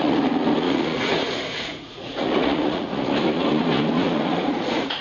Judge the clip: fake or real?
fake